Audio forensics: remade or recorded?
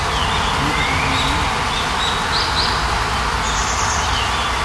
recorded